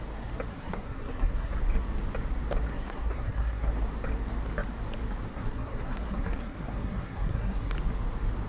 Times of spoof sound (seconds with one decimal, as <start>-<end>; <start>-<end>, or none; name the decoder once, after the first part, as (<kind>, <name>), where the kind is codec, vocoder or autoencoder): 0.5-1.5 (codec, SNAC); 2.7-3.7; 5.3-7.7